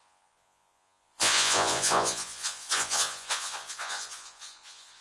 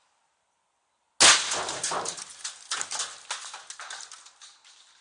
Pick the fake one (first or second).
first